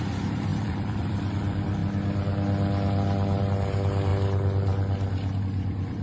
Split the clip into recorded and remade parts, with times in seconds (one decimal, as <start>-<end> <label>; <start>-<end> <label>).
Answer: 0.0-1.8 remade; 1.8-3.4 recorded; 3.4-4.1 remade; 4.1-5.4 recorded; 5.4-6.0 remade